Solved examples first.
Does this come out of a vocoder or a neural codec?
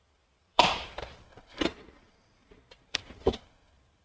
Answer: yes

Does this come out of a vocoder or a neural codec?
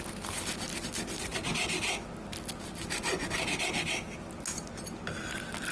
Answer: no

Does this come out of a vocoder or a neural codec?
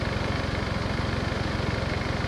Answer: no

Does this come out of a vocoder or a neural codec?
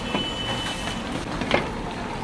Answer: no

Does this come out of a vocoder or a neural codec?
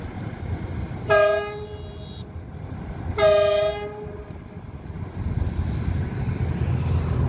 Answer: no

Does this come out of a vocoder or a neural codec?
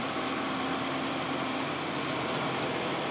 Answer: yes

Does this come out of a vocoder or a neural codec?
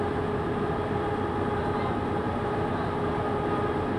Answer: no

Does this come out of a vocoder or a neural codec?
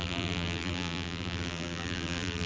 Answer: yes